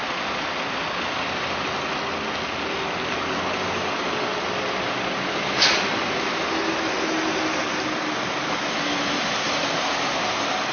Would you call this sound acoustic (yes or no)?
yes